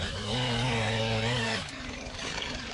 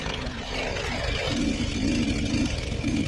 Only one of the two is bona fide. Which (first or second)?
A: second